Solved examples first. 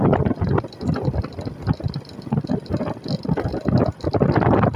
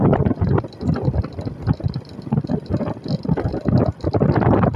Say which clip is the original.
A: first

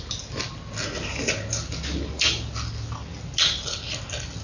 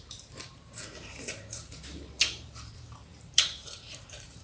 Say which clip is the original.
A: first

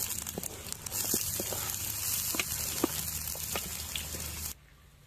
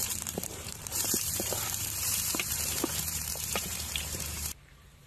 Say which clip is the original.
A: first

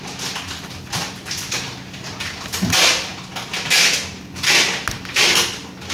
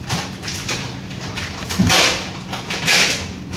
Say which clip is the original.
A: first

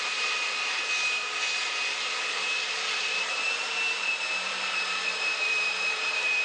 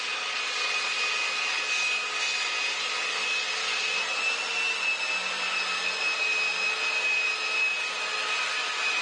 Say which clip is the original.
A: second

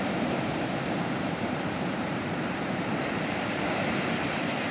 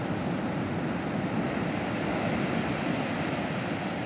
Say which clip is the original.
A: second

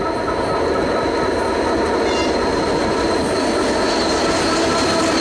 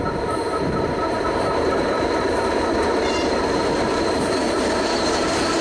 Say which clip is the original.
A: first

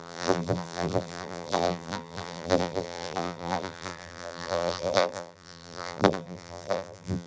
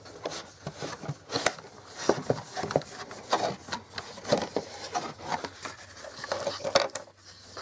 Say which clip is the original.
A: second